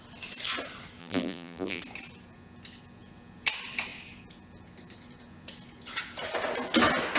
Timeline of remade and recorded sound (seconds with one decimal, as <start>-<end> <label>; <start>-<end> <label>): 0.0-1.0 recorded; 1.0-1.8 remade; 1.8-7.2 recorded